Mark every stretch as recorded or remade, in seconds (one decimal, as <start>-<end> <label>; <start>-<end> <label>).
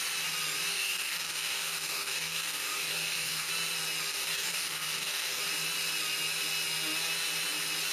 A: 0.0-0.7 recorded; 0.7-3.5 remade; 3.5-4.1 recorded; 4.1-5.4 remade; 5.4-7.9 recorded